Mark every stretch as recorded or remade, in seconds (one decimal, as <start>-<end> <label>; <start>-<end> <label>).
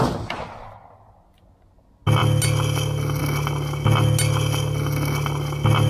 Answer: 0.0-5.9 recorded